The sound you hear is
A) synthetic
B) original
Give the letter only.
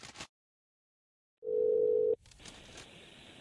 B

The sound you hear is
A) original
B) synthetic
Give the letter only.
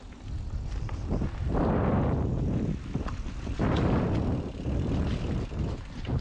A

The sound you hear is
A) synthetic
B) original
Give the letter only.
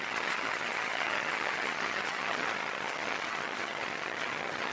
A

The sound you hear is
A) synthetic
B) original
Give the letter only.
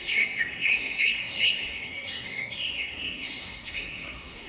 A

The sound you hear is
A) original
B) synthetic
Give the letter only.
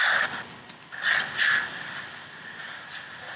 A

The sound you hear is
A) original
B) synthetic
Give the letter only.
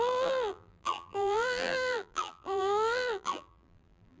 B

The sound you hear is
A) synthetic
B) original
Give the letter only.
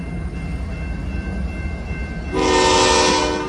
B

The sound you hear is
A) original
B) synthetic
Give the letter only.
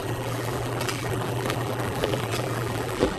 B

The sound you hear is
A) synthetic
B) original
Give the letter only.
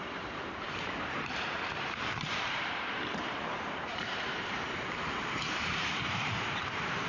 A